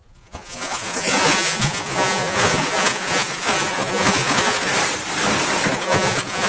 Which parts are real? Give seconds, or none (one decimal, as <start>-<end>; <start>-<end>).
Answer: 4.7-5.7